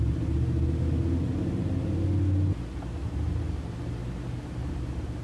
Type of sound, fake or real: real